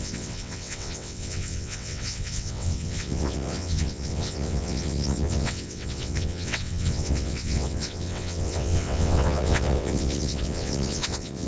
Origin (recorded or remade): remade